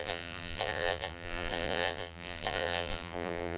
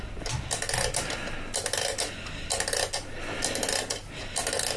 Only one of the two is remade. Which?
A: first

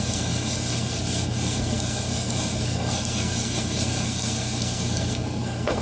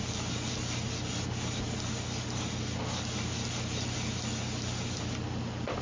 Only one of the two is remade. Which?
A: first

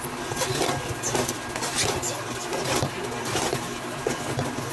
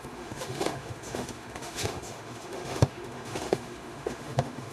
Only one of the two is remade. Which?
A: second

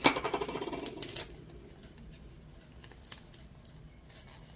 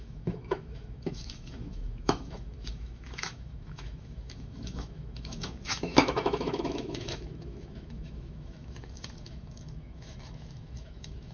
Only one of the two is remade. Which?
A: second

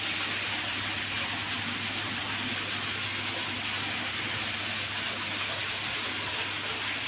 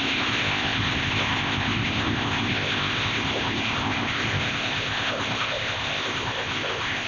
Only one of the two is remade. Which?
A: second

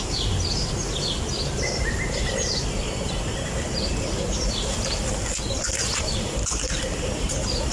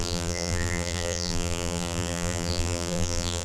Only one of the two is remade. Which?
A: second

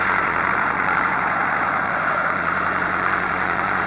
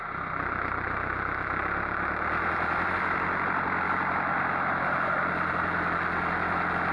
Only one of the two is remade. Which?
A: first